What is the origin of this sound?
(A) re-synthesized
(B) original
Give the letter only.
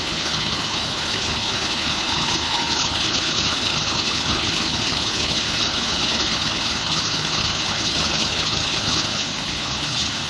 A